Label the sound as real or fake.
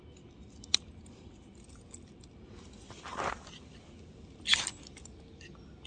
real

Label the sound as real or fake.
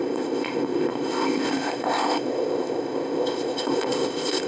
fake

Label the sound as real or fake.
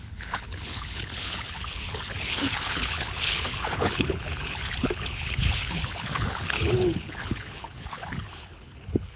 fake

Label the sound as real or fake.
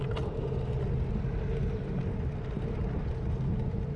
real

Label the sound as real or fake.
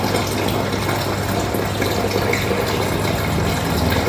real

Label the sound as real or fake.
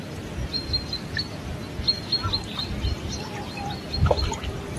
real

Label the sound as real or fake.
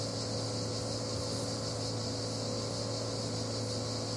real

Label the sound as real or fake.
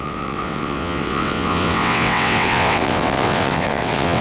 fake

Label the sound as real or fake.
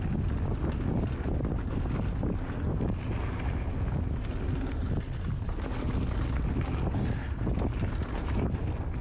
real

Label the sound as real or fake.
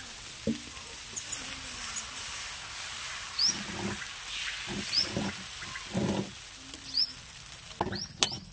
real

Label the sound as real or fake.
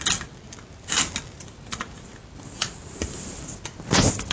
real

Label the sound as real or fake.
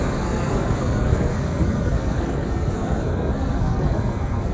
fake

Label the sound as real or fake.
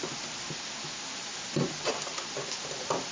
fake